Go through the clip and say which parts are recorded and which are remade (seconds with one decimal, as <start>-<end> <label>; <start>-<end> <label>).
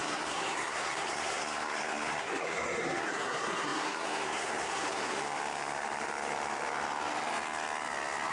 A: 0.0-5.2 remade; 5.2-8.3 recorded